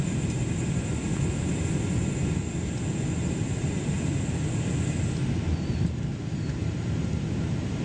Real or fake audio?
real